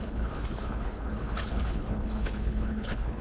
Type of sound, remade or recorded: remade